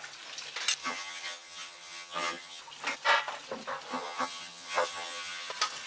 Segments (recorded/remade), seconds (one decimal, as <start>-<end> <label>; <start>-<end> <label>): 0.0-0.8 recorded; 0.8-2.6 remade; 2.6-3.9 recorded; 3.9-5.5 remade; 5.5-5.9 recorded